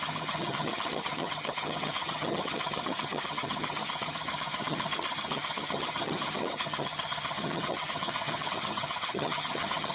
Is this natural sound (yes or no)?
no